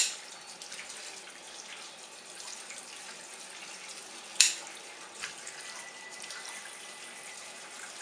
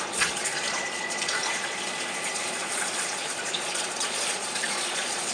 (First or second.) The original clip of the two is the first